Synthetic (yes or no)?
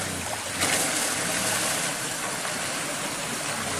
no